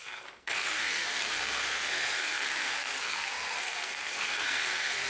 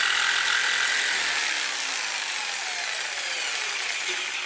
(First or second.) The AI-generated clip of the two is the first